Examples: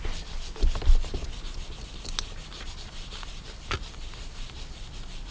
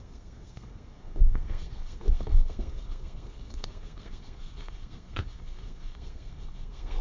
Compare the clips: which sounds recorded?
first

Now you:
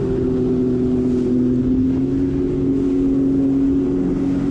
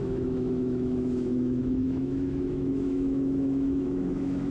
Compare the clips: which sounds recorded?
first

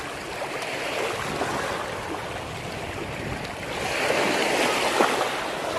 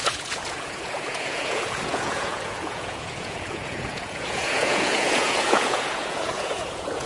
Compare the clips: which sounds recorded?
first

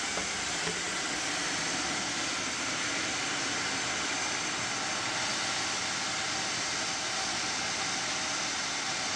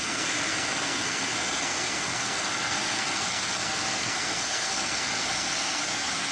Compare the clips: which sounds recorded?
first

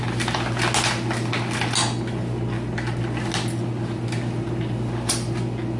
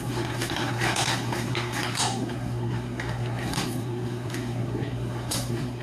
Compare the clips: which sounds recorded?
first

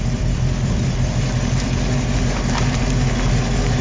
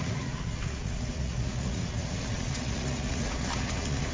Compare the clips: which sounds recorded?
first